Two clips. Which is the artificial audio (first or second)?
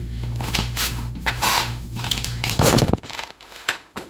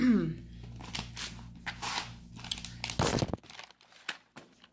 first